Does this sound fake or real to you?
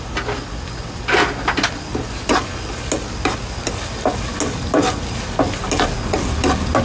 real